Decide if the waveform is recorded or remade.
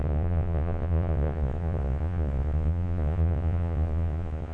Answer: remade